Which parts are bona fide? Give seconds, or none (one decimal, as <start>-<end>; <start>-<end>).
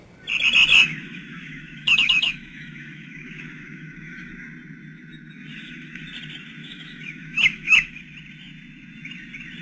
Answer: 0.0-0.7; 4.3-5.5; 6.0-6.6; 8.0-9.6